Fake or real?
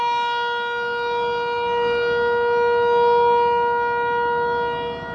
real